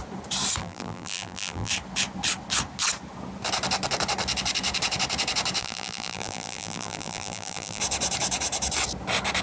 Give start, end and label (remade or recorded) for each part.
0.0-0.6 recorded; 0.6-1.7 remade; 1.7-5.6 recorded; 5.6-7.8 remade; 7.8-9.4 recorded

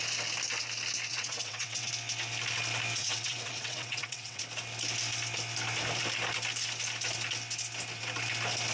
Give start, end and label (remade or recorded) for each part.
0.0-1.1 recorded; 1.1-1.9 remade; 1.9-3.0 recorded; 3.0-4.4 remade; 4.4-8.7 recorded